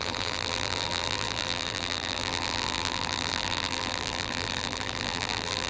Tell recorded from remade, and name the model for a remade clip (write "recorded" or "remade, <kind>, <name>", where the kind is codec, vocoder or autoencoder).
remade, vocoder, BigVGAN v2